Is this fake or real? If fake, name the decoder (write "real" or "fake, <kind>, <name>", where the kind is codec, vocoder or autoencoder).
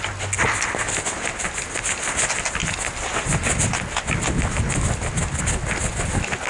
real